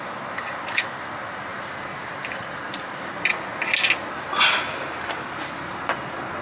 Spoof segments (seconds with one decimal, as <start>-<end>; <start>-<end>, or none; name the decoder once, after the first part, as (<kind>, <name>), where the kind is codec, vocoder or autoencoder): none